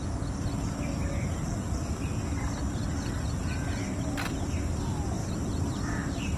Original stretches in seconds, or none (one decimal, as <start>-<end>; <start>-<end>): 0.0-3.8; 4.8-5.2